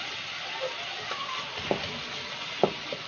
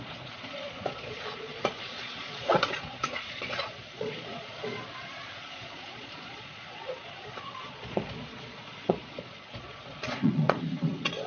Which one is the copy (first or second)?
second